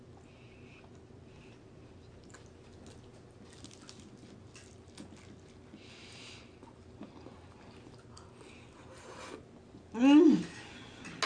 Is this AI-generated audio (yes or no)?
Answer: no